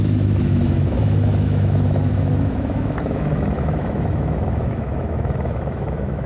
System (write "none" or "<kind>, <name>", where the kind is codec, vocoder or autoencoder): autoencoder, DAC-VAE